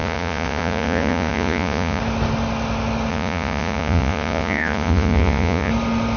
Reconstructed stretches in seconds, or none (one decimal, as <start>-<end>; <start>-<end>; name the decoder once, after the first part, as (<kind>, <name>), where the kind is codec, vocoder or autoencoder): 0.0-2.0 (vocoder, Vocos); 3.1-5.7